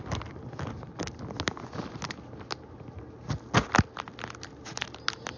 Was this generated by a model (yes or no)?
no